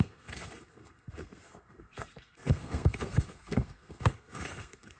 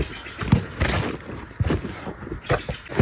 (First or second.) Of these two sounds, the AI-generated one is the first